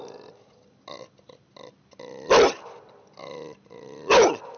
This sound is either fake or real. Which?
real